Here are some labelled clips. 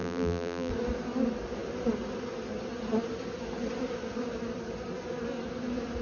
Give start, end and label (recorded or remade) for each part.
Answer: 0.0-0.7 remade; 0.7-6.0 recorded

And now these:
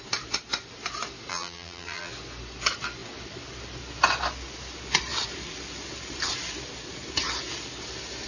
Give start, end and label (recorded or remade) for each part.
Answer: 0.0-1.3 recorded; 1.3-2.1 remade; 2.1-8.3 recorded

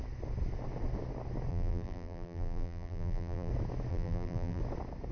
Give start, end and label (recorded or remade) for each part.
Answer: 0.0-1.5 recorded; 1.5-3.5 remade; 3.5-3.9 recorded; 3.9-4.6 remade; 4.6-5.1 recorded

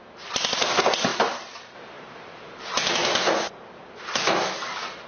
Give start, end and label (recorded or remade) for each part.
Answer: 0.0-1.1 recorded; 1.1-2.5 remade; 2.5-5.1 recorded

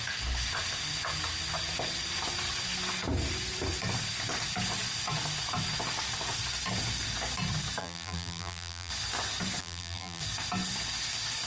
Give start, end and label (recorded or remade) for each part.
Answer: 0.0-7.8 recorded; 7.8-8.9 remade; 8.9-9.6 recorded; 9.6-10.2 remade; 10.2-11.5 recorded

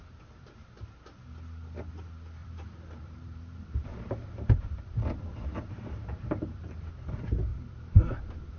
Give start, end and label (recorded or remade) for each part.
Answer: 0.0-2.4 recorded; 2.4-6.9 remade; 6.9-7.5 recorded; 7.5-8.2 remade; 8.2-8.6 recorded

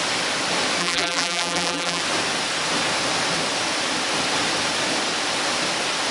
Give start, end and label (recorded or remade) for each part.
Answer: 0.0-0.8 recorded; 0.8-2.0 remade; 2.0-6.1 recorded